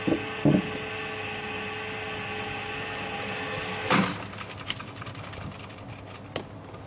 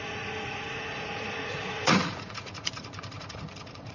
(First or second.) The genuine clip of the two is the first